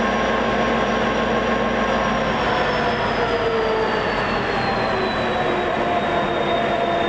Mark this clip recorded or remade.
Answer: recorded